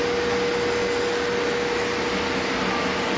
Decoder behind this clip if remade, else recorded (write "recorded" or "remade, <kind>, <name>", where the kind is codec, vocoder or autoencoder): recorded